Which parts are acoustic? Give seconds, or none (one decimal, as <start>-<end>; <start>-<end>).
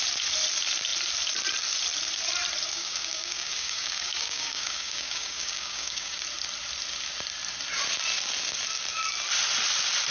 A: 0.0-2.7; 6.2-10.1